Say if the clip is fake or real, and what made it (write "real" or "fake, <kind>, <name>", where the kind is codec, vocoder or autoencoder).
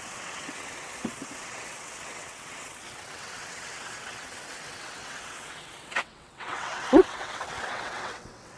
fake, vocoder, WaveNeXt